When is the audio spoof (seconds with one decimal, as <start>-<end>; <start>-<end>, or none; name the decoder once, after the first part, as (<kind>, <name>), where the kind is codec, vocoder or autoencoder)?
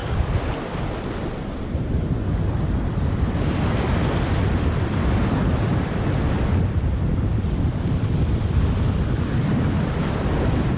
1.2-10.8 (vocoder, BigVGAN v2)